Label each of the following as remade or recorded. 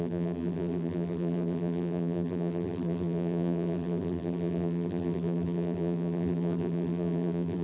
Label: remade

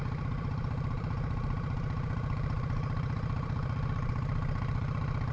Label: remade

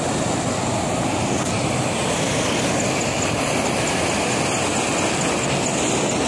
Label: recorded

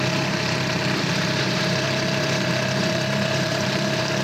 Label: remade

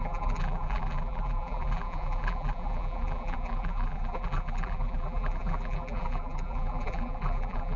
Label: remade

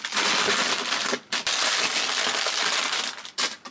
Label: recorded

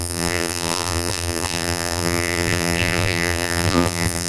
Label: remade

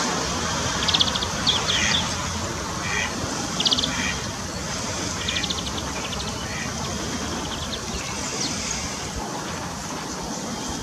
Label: recorded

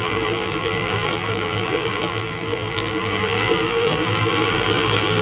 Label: remade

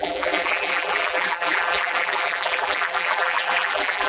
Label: remade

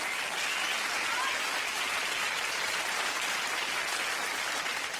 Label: recorded